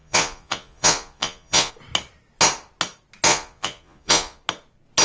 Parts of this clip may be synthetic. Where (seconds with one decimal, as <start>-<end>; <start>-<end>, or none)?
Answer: 0.0-1.7; 3.3-4.4